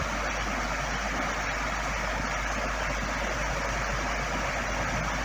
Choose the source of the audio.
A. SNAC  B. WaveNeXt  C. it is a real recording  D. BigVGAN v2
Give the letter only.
C